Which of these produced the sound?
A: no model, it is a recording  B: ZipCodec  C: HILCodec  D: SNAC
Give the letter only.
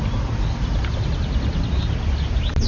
A